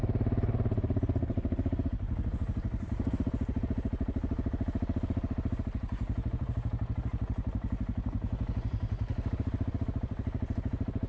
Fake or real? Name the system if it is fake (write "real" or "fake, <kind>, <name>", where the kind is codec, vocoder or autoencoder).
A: fake, vocoder, BigVGAN v2